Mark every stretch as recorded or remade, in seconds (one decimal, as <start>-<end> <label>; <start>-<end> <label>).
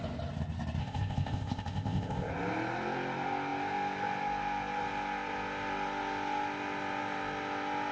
0.0-0.8 recorded; 0.8-2.3 remade; 2.3-7.9 recorded